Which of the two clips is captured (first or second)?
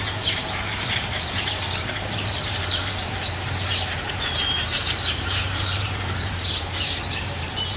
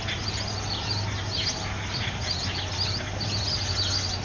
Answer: second